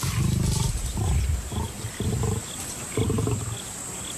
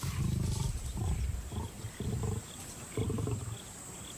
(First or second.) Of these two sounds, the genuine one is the first